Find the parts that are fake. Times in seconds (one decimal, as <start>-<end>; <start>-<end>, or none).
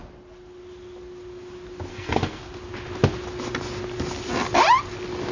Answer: 1.9-2.4